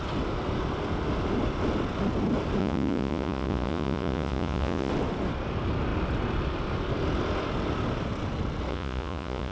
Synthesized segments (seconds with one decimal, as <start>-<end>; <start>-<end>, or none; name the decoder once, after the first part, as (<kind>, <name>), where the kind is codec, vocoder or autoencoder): 2.6-4.9 (vocoder, Vocos); 8.7-9.5